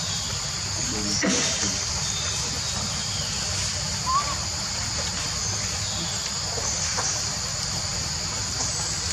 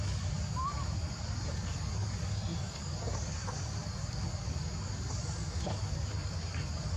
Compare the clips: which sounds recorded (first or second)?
first